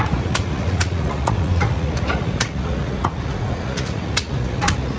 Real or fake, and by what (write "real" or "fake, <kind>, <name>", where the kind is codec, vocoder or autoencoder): fake, vocoder, Vocos